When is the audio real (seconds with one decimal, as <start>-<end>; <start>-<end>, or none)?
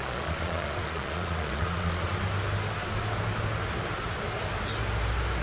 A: 2.1-5.4